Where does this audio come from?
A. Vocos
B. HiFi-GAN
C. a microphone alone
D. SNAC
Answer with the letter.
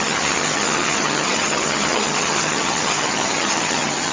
B